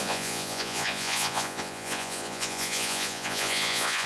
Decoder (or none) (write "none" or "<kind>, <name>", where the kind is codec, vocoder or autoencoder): vocoder, Vocos